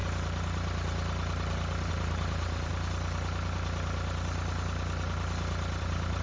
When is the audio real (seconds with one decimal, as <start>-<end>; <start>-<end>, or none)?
0.0-1.9; 2.7-5.8